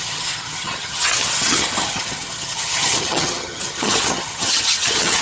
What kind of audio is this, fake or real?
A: fake